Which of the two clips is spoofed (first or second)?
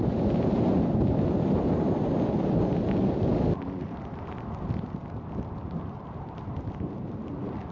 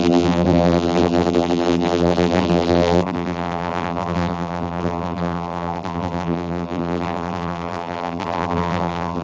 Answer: second